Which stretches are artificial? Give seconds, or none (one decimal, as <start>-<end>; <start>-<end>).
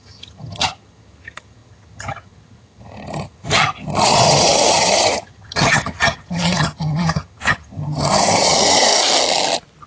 0.0-8.9